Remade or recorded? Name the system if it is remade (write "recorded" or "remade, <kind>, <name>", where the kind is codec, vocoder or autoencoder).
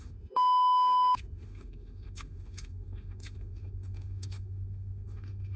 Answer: remade, autoencoder, DAC-VAE